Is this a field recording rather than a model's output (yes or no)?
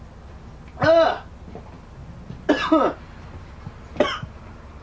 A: yes